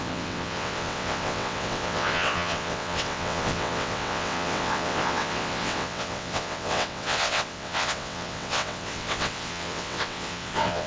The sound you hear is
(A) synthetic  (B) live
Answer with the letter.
A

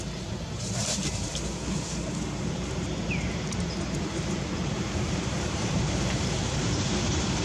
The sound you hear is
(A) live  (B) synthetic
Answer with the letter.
B